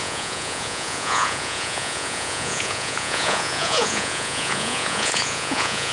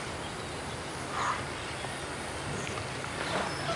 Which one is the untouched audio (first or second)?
second